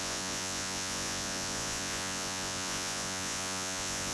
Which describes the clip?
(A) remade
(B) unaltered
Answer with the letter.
A